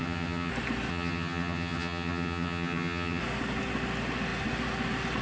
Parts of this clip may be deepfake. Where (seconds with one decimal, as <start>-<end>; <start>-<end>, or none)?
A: 0.0-0.5; 0.9-3.2